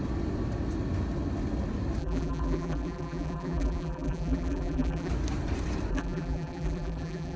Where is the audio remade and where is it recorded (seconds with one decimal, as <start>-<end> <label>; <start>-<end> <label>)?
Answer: 0.0-2.0 recorded; 2.0-5.1 remade; 5.1-5.9 recorded; 5.9-7.4 remade